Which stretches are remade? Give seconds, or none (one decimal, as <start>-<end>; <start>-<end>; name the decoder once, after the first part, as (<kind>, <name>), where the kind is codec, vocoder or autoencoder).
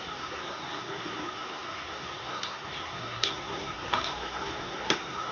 0.0-5.3 (codec, SNAC)